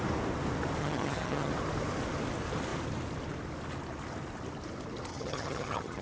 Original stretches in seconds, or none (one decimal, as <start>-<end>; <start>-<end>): 0.0-0.8; 1.5-5.1